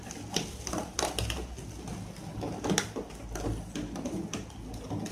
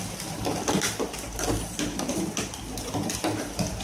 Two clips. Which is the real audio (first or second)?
first